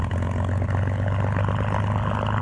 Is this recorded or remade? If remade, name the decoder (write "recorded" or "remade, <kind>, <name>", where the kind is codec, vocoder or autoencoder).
recorded